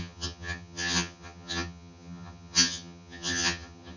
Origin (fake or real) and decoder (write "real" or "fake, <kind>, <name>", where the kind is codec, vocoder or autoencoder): fake, vocoder, HiFi-GAN